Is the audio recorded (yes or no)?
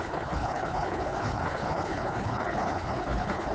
no